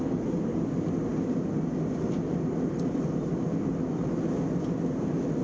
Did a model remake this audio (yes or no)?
no